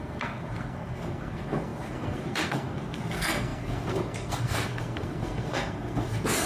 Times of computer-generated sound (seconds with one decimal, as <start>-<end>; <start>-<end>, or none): 0.0-6.5